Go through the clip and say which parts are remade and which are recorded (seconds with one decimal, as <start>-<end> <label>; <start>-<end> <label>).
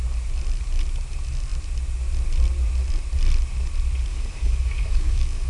0.0-4.1 recorded; 4.1-5.5 remade